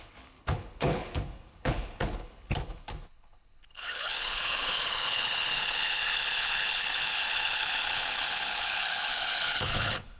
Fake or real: fake